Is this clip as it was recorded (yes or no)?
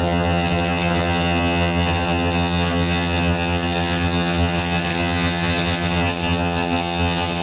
no